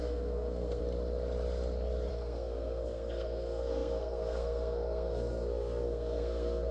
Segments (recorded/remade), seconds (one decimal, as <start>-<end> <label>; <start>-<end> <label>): 0.0-0.8 remade; 0.8-2.1 recorded; 2.1-6.7 remade